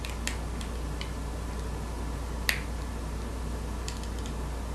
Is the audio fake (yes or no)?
no